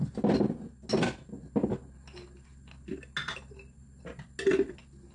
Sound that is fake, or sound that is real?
real